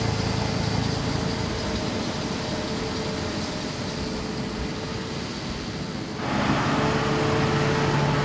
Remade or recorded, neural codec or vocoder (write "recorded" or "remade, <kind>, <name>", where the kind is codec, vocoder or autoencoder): recorded